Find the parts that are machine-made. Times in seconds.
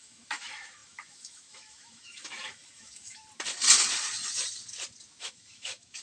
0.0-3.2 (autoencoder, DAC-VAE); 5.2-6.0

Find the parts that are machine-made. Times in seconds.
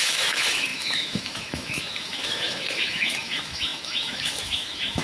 0.0-5.0 (autoencoder, DAC-VAE)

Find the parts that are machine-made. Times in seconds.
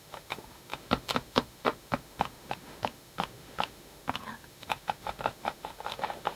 0.0-6.4 (autoencoder, DAC-VAE)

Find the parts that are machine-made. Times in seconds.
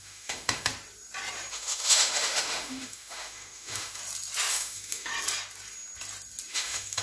0.0-0.7 (autoencoder, DAC-VAE); 1.5-4.0; 4.5-5.1; 6.5-7.0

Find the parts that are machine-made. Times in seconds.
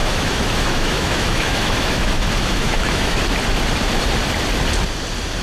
0.0-3.2 (autoencoder, DAC-VAE)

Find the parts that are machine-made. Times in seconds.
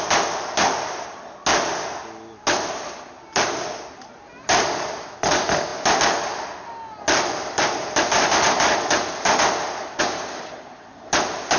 none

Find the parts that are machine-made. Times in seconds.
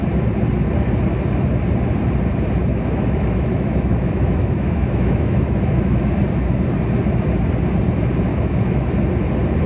2.7-6.2 (autoencoder, DAC-VAE); 8.3-8.9